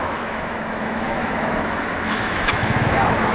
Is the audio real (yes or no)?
no